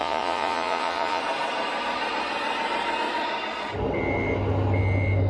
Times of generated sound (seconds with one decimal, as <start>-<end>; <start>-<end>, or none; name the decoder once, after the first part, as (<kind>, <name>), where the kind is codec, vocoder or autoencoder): 0.0-1.2 (vocoder, Vocos)